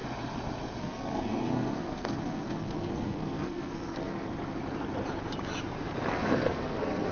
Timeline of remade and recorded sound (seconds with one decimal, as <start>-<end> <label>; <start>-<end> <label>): 0.0-0.8 recorded; 0.8-4.3 remade; 4.3-6.1 recorded; 6.1-7.1 remade